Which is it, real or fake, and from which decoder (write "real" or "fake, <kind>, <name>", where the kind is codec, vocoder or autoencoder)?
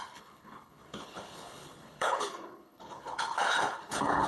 fake, codec, HILCodec